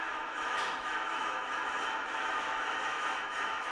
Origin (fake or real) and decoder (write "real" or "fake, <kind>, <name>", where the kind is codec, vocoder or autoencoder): fake, autoencoder, DAC-VAE